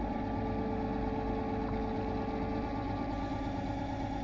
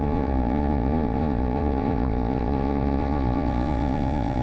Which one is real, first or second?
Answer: first